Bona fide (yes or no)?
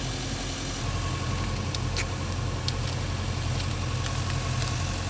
yes